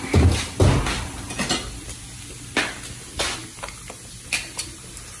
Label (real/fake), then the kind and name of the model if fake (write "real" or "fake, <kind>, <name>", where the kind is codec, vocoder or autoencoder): real